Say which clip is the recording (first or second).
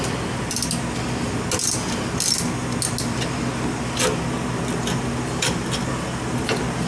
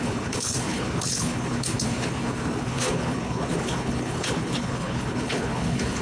first